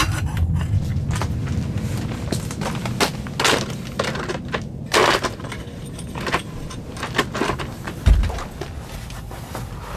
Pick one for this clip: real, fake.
real